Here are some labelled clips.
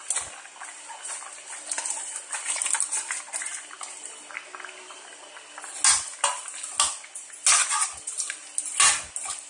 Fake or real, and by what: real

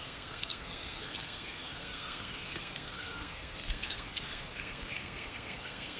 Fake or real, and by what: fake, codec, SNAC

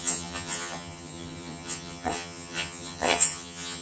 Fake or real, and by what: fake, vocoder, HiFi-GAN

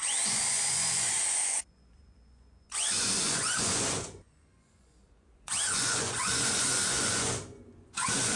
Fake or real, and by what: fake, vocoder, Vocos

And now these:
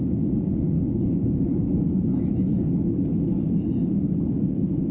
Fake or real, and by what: real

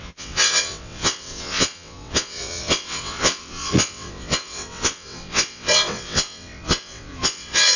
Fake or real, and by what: fake, vocoder, WaveNeXt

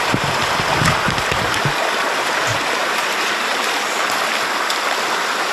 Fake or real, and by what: fake, vocoder, BigVGAN v2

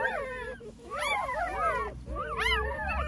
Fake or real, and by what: fake, vocoder, BigVGAN v2